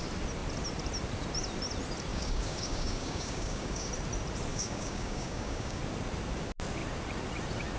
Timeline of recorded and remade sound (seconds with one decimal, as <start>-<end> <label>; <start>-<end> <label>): 0.0-2.1 recorded; 2.1-3.9 remade; 3.9-4.5 recorded; 4.5-5.8 remade; 5.8-7.8 recorded